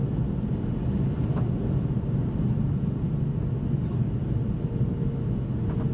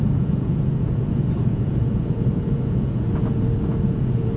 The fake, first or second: second